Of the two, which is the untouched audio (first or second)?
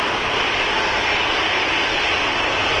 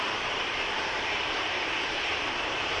first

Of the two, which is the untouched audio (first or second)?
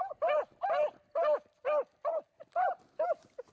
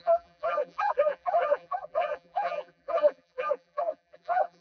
first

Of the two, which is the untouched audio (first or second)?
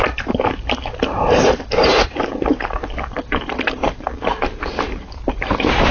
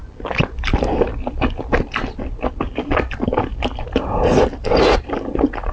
second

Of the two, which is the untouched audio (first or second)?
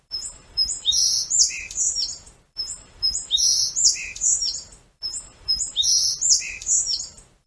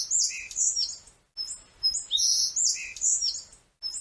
second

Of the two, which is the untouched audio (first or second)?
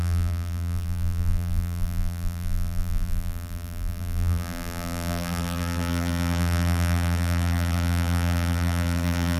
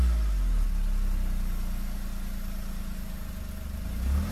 second